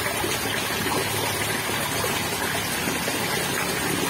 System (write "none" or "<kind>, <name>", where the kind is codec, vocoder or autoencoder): none